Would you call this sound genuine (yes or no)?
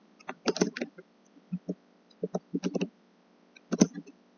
yes